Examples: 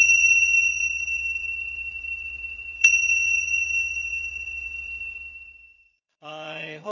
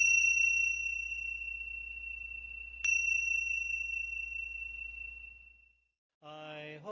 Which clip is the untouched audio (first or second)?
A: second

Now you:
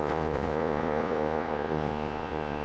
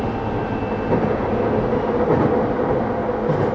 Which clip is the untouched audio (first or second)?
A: second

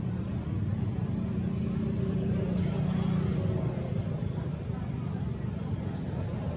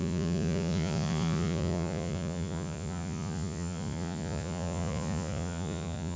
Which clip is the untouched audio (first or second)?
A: first